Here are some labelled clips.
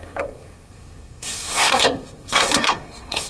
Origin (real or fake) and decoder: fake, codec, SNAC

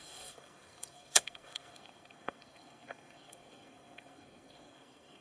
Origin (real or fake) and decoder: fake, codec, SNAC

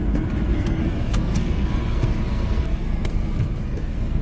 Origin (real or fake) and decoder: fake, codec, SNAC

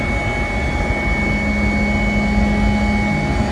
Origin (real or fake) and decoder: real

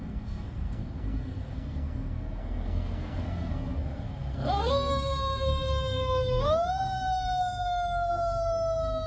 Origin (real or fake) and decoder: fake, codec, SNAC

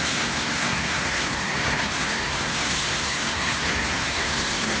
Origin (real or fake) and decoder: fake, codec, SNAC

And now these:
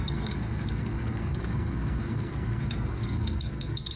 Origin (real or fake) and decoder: fake, codec, SNAC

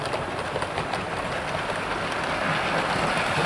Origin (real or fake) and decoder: real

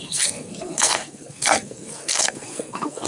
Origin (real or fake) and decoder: fake, codec, SNAC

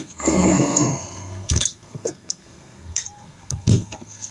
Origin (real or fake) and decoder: fake, codec, SNAC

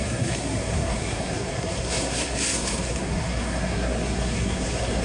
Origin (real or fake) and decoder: fake, codec, SNAC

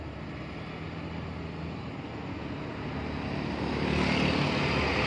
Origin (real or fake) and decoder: real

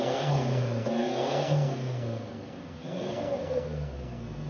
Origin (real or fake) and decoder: fake, codec, SNAC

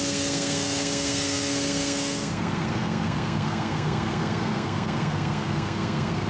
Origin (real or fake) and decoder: fake, codec, SNAC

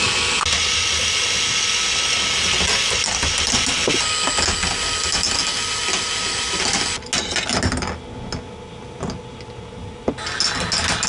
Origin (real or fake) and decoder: real